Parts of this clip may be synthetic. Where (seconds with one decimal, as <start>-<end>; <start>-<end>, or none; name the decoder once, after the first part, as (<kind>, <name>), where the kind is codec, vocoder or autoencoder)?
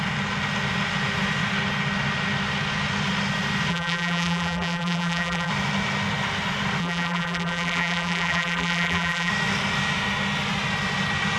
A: 3.7-5.5 (vocoder, BigVGAN v2); 6.8-9.3